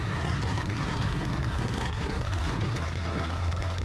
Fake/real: fake